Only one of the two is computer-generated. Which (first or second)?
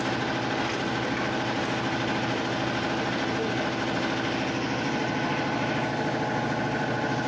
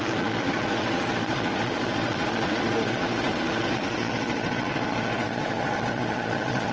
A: second